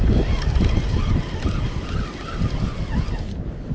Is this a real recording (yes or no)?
yes